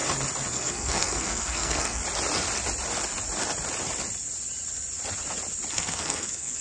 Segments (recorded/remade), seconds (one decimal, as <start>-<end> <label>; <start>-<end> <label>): 0.0-0.5 recorded; 0.5-2.0 remade; 2.0-5.7 recorded; 5.7-6.6 remade